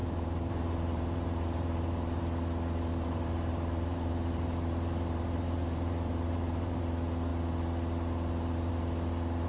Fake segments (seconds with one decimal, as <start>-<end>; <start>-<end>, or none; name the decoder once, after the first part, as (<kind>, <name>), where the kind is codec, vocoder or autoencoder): 0.0-2.2 (vocoder, BigVGAN v2); 2.9-6.8